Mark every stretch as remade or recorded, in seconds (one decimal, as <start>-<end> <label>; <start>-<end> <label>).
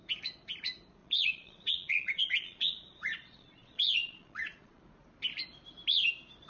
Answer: 0.0-1.0 recorded; 1.0-4.8 remade; 4.8-6.5 recorded